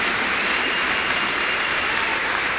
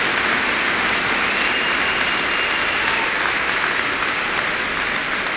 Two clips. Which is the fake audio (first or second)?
first